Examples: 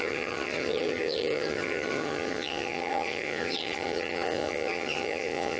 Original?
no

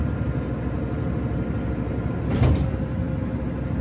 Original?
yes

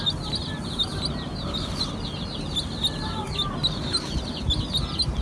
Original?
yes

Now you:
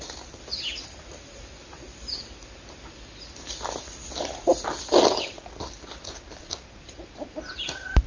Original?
yes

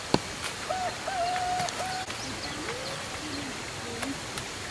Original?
yes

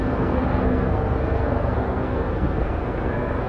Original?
no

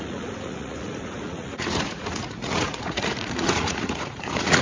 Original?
no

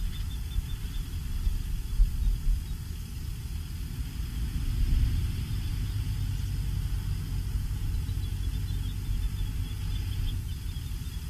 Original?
yes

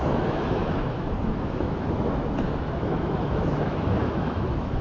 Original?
no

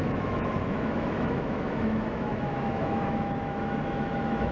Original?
no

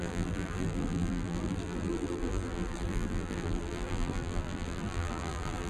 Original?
no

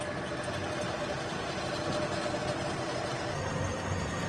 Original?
yes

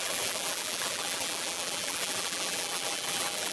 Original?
no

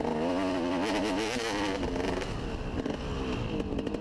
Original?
yes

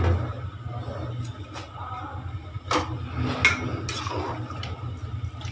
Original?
yes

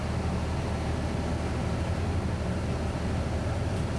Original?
yes